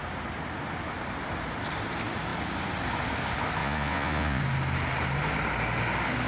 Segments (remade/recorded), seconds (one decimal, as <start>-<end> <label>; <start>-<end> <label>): 0.0-3.6 recorded; 3.6-4.4 remade; 4.4-6.3 recorded